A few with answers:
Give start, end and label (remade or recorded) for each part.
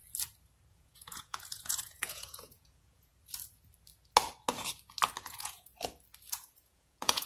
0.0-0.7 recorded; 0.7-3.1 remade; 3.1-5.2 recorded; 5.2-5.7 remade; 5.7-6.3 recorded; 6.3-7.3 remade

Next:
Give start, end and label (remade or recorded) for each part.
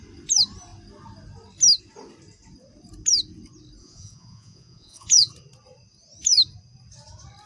0.0-3.8 recorded; 3.8-5.3 remade; 5.3-7.5 recorded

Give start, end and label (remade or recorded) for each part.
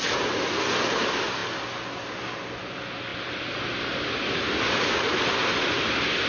0.0-6.3 recorded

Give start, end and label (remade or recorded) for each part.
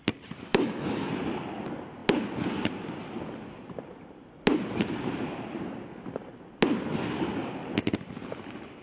0.0-0.5 recorded; 0.5-1.1 remade; 1.1-8.8 recorded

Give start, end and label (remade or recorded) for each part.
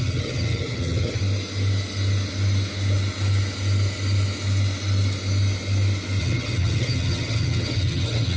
0.0-1.2 remade; 1.2-6.2 recorded; 6.2-8.4 remade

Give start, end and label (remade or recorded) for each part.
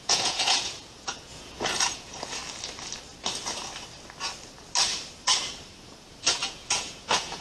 0.0-2.4 remade; 2.4-6.0 recorded; 6.0-7.4 remade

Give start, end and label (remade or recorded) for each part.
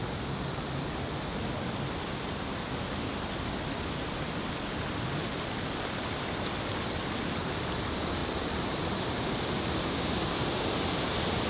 0.0-11.5 recorded